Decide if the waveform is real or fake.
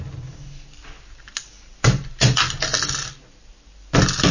real